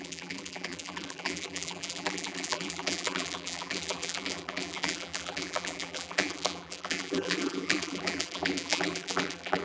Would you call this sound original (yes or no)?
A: no